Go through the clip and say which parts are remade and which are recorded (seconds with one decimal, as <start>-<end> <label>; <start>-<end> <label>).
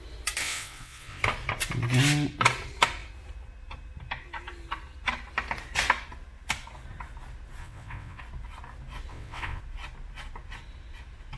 0.0-0.4 recorded; 0.4-1.2 remade; 1.2-7.6 recorded; 7.6-8.2 remade; 8.2-9.1 recorded; 9.1-9.6 remade; 9.6-11.4 recorded